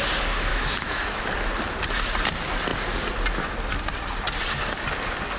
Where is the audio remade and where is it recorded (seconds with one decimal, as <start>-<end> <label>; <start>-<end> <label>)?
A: 0.0-0.5 recorded; 0.5-1.3 remade; 1.3-5.4 recorded